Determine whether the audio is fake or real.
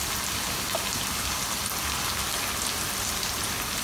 real